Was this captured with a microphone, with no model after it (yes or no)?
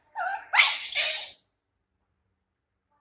yes